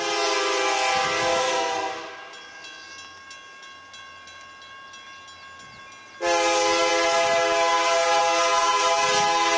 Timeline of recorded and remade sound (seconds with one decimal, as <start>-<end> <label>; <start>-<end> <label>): 0.0-1.4 recorded; 1.4-1.9 remade; 1.9-9.6 recorded